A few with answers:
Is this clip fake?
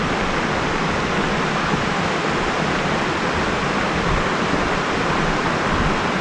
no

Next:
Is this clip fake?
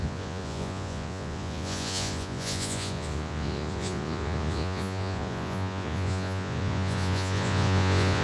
yes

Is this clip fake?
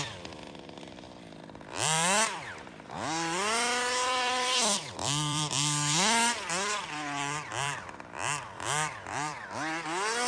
yes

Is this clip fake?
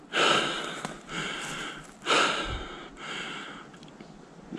no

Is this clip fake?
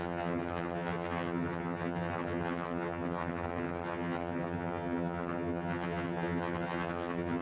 yes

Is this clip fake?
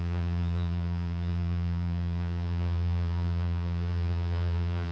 yes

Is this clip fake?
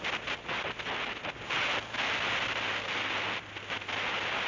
no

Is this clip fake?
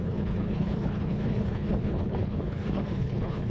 yes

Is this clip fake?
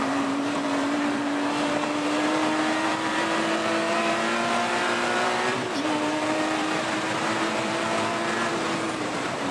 yes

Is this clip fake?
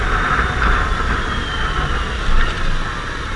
no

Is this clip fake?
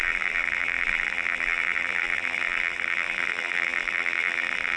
yes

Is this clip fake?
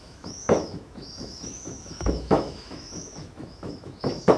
yes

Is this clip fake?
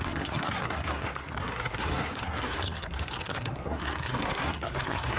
yes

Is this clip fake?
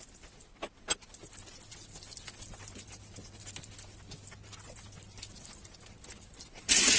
no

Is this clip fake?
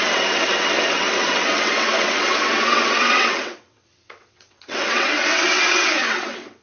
yes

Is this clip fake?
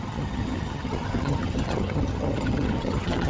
yes